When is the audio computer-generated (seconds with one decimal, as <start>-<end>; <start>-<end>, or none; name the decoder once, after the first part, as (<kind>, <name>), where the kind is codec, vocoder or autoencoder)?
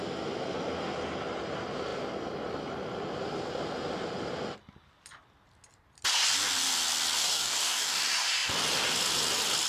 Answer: 7.2-8.0 (codec, DAC)